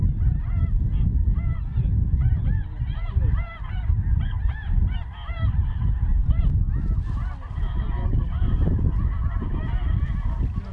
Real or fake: real